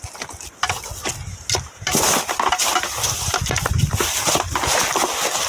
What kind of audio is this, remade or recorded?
recorded